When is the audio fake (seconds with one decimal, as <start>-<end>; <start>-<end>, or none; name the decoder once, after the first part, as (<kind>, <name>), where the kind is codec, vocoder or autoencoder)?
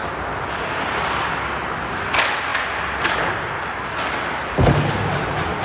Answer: none